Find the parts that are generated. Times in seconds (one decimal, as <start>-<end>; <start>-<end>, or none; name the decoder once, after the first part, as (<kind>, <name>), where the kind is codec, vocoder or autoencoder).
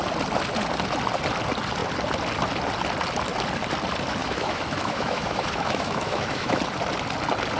4.2-6.6 (autoencoder, DAC-VAE)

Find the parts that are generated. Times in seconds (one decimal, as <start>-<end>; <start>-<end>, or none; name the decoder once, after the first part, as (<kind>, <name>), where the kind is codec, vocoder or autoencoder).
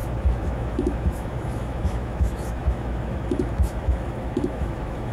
0.0-5.1 (autoencoder, DAC-VAE)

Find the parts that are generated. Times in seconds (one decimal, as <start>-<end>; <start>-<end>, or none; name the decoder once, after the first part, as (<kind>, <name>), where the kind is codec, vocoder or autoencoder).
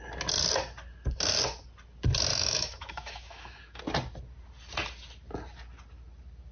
2.3-3.8 (autoencoder, DAC-VAE)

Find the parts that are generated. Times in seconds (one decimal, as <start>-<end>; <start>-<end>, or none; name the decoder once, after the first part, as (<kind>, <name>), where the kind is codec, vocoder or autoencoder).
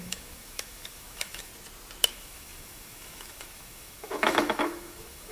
0.0-1.5 (autoencoder, DAC-VAE); 2.1-5.3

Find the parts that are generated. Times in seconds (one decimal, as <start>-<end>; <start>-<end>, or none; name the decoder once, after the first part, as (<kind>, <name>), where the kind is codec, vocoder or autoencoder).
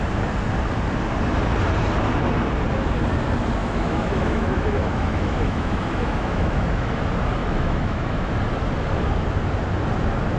3.6-7.0 (autoencoder, DAC-VAE); 7.4-8.3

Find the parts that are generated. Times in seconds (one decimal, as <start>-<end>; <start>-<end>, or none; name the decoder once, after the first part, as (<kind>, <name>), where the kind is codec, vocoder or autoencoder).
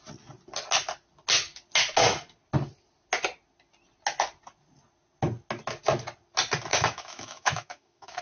6.7-8.2 (autoencoder, DAC-VAE)